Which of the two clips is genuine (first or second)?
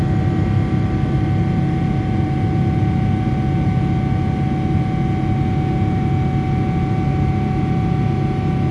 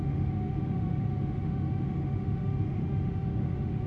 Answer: first